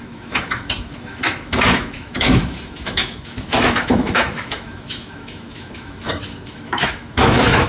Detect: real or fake fake